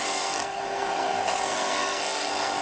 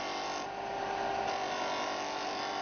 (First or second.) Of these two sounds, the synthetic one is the first